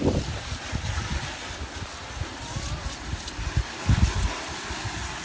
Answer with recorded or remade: recorded